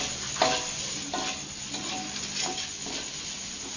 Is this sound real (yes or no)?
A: yes